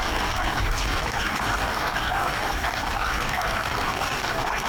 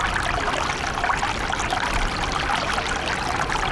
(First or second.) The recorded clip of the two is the second